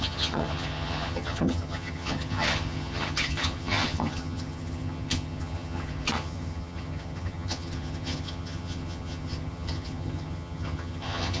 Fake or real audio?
fake